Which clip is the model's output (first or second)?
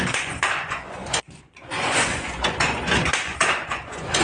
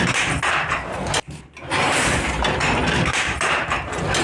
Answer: first